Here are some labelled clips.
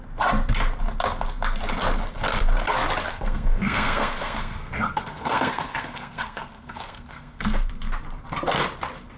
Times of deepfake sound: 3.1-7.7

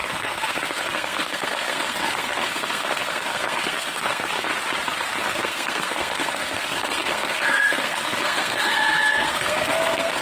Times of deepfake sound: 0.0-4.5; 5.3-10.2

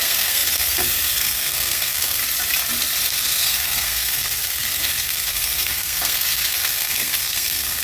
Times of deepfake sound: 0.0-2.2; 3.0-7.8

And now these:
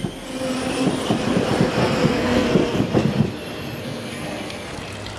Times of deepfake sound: 1.8-2.8; 3.8-4.8

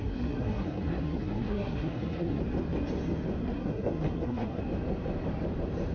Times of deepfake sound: 0.0-2.4; 3.4-4.6

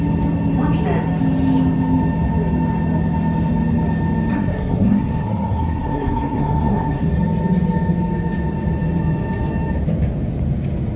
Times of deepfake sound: 4.3-7.1

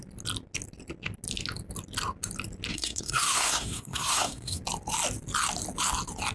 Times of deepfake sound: 2.7-4.6